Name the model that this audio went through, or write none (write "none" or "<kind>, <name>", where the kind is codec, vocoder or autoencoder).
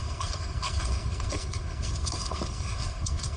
codec, SNAC